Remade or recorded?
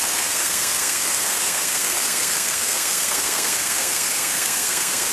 remade